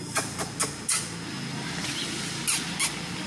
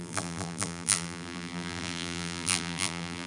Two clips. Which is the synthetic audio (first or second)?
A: second